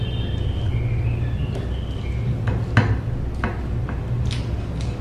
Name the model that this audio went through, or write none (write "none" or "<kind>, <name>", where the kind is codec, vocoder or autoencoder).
none